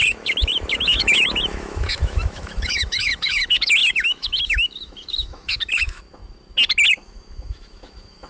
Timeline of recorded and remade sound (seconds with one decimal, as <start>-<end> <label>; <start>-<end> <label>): 0.0-6.2 remade; 6.2-6.9 recorded; 6.9-8.3 remade